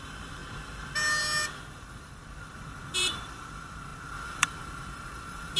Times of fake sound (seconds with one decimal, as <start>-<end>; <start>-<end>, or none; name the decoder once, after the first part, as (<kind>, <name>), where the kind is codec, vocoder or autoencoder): 0.0-0.4 (vocoder, BigVGAN v2); 1.6-5.6

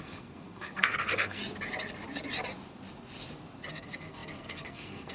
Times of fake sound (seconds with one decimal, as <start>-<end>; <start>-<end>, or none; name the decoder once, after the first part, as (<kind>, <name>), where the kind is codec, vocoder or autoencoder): 0.0-1.4 (codec, SNAC); 3.7-5.1

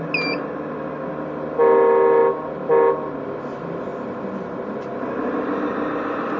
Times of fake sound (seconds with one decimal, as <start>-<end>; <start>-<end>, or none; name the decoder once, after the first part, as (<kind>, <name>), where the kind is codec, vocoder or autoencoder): none

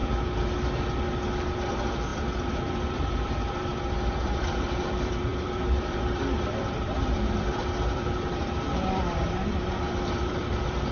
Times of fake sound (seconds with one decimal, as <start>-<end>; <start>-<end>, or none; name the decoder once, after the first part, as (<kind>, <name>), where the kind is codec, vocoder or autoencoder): 1.7-3.7 (vocoder, BigVGAN v2); 4.3-10.9

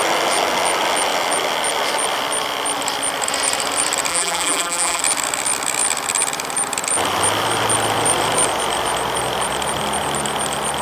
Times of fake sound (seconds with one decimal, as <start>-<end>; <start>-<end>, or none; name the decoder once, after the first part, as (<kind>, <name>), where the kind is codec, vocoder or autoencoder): 4.1-5.0 (vocoder, BigVGAN v2)

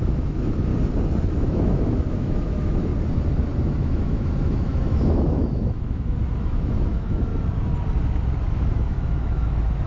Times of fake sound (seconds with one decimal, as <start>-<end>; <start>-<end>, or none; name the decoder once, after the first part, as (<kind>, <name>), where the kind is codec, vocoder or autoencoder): 0.0-0.7 (autoencoder, DAC-VAE); 1.4-2.9; 3.6-7.3; 8.5-9.9